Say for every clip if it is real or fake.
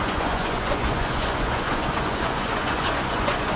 fake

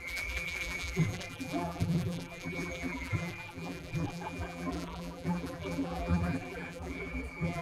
fake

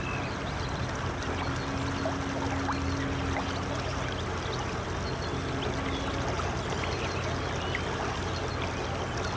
real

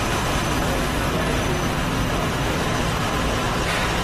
real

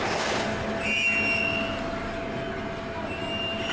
real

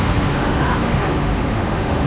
fake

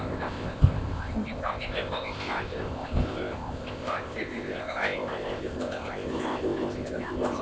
fake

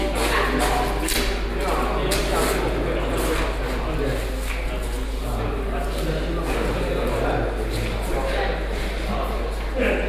real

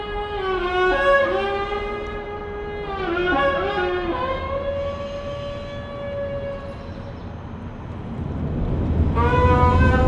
real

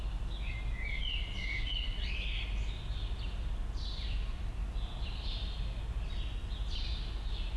real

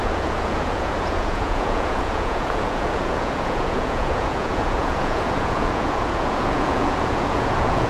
fake